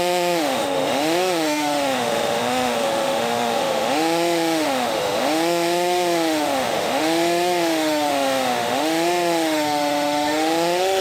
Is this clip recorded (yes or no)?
no